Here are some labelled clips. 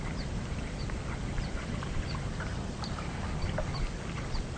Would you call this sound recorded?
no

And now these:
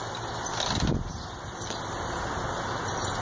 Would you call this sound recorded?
yes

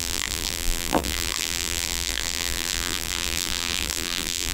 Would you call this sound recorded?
no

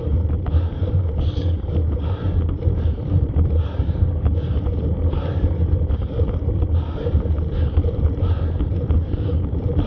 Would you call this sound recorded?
no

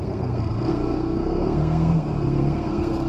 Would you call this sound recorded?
no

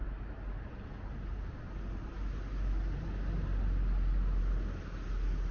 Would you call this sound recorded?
yes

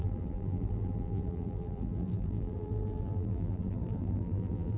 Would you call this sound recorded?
no